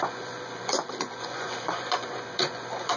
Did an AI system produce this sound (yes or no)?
yes